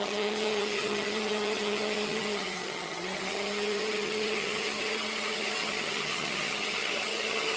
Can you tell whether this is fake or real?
fake